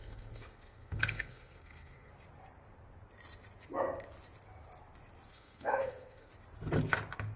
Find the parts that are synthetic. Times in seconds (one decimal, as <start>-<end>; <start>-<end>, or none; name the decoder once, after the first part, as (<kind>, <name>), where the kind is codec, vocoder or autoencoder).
0.0-2.1 (codec, SNAC); 5.3-6.3